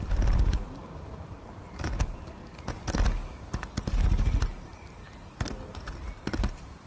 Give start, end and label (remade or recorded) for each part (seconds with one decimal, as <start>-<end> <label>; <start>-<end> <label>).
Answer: 0.0-2.4 remade; 2.4-6.5 recorded; 6.5-6.9 remade

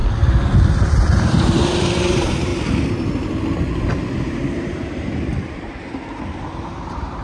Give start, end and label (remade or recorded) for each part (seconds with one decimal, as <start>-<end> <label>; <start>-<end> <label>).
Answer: 0.0-0.7 recorded; 0.7-2.5 remade; 2.5-4.3 recorded; 4.3-7.2 remade

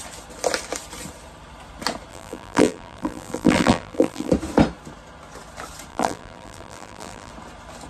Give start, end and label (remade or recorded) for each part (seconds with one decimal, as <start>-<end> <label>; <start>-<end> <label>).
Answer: 0.0-2.1 recorded; 2.1-4.3 remade; 4.3-5.9 recorded; 5.9-7.3 remade; 7.3-7.9 recorded

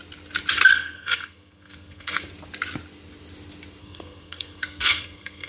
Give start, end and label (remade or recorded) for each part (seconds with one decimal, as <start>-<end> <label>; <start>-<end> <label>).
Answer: 0.0-0.7 recorded; 0.7-2.2 remade; 2.2-3.8 recorded; 3.8-5.5 remade

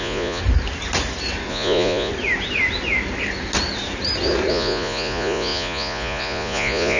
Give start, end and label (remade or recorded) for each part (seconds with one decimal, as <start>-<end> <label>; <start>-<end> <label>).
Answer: 0.0-0.4 remade; 0.4-1.5 recorded; 1.5-2.1 remade; 2.1-4.5 recorded; 4.5-7.0 remade